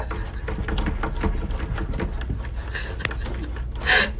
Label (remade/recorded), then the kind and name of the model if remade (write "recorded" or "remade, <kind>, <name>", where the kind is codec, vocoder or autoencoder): recorded